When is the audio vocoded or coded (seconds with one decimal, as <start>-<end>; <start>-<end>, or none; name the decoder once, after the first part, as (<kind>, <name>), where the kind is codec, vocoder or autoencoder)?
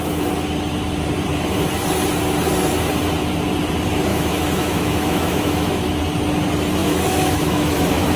4.1-6.0 (autoencoder, DAC-VAE); 6.8-8.2